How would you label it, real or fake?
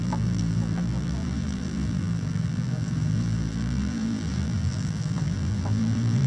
fake